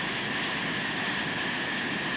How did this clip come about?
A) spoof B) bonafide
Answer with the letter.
B